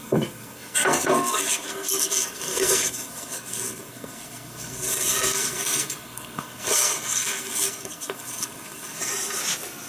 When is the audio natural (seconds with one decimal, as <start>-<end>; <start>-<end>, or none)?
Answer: 9.1-9.9